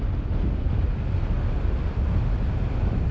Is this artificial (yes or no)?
no